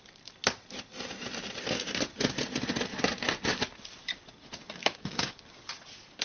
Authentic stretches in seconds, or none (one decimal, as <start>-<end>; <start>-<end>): 0.0-4.8; 5.4-6.2